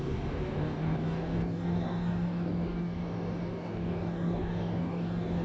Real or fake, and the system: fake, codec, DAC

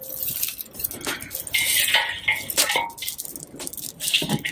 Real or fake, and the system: real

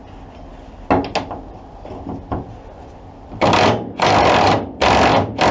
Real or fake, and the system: real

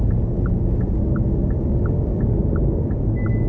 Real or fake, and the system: real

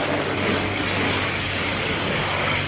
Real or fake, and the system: fake, codec, DAC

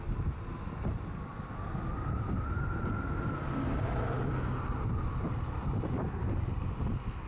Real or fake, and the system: real